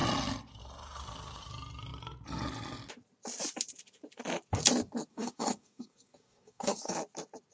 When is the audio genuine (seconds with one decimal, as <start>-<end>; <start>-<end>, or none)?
0.0-5.1; 6.9-7.5